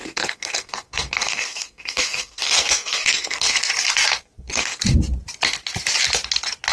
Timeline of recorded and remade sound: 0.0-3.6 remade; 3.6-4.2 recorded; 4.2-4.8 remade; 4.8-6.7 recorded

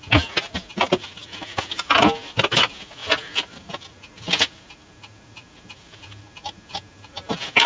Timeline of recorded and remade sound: 0.0-7.7 recorded